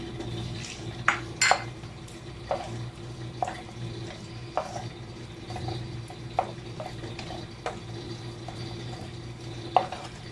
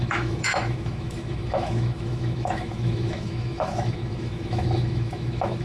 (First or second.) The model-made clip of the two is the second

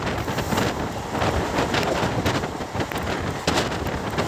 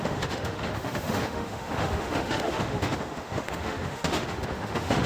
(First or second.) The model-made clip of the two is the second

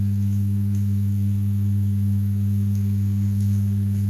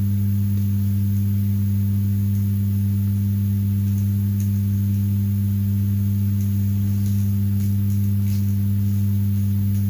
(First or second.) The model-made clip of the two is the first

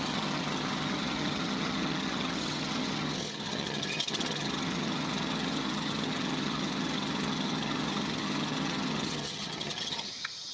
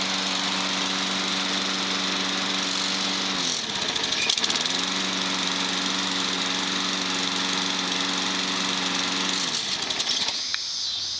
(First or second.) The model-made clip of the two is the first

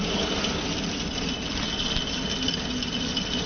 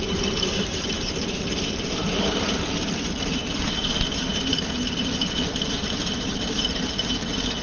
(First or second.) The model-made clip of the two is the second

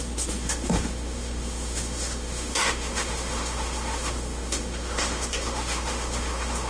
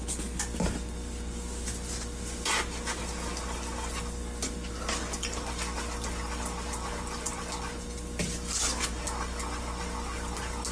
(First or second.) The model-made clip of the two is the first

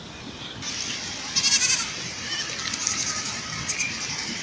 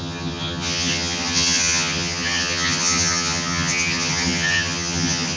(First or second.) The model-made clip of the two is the second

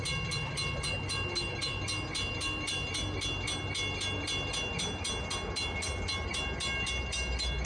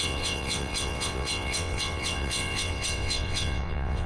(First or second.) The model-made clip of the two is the second